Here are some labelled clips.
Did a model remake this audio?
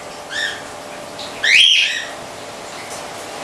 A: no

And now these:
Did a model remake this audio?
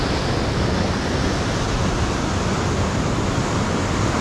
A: no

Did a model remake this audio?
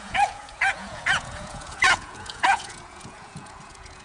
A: yes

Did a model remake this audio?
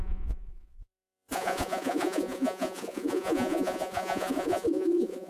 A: yes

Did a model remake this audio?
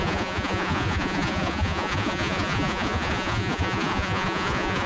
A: yes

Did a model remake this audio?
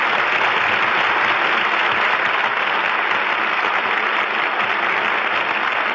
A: no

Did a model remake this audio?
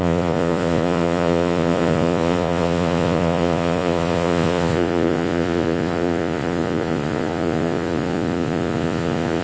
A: yes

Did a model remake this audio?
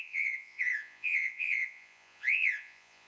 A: yes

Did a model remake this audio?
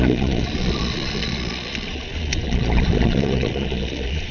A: yes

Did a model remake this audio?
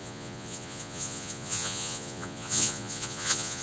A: yes